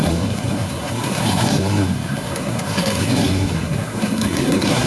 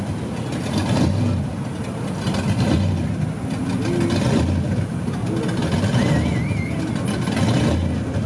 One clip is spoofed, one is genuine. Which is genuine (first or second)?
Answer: second